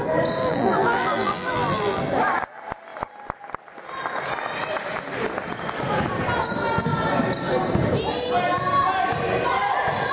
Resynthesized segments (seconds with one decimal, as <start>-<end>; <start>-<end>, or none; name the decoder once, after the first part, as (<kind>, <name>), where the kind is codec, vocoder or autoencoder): 0.4-2.0 (vocoder, BigVGAN v2)

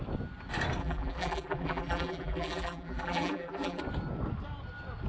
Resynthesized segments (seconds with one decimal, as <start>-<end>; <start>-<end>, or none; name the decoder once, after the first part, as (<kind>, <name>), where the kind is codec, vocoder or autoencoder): 0.8-3.8 (vocoder, BigVGAN v2)